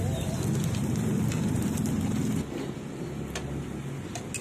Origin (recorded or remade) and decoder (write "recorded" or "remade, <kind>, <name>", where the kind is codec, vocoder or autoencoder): recorded